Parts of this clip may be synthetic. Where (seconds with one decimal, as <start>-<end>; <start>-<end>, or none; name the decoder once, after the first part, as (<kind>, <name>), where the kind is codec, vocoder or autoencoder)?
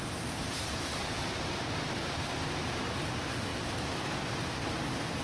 none